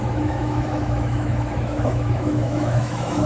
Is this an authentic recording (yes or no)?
no